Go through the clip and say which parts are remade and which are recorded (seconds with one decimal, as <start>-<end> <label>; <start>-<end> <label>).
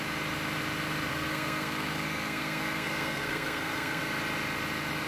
0.0-1.1 recorded; 1.1-4.0 remade; 4.0-5.1 recorded